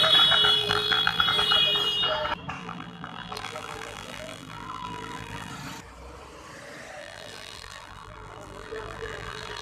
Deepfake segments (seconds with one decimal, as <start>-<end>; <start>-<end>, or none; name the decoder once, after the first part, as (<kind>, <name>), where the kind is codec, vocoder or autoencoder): 0.6-1.2 (vocoder, BigVGAN v2); 2.6-5.5; 7.0-9.6